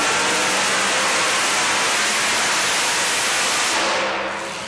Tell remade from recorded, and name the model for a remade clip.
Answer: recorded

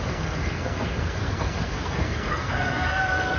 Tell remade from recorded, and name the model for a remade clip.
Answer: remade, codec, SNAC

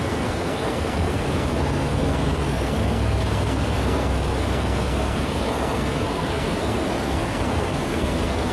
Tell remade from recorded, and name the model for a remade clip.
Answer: remade, codec, SNAC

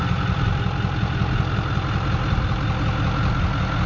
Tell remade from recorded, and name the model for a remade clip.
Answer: recorded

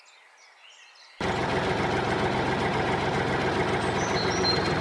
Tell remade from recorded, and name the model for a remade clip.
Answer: recorded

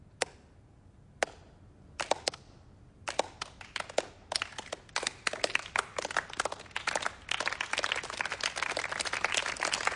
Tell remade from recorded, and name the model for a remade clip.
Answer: recorded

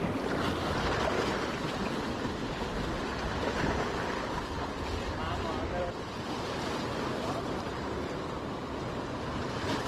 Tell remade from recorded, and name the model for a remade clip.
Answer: recorded